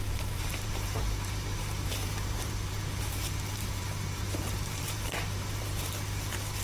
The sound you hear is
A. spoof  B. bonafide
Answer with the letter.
A